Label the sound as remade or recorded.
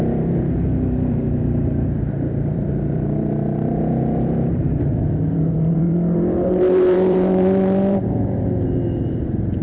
remade